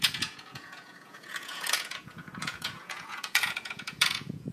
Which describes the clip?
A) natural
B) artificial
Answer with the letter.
B